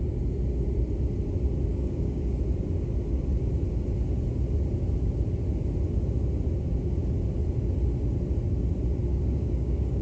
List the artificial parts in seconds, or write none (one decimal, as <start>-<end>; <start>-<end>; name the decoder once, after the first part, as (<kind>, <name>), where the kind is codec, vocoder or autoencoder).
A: 1.7-2.4 (codec, DAC); 9.1-10.0